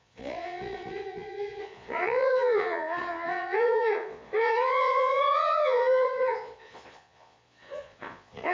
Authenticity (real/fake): fake